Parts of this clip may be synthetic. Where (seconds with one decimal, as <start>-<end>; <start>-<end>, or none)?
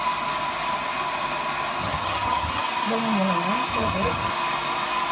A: 1.8-2.6; 3.7-4.3